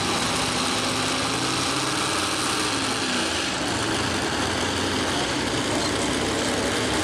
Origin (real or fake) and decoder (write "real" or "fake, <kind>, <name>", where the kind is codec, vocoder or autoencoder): real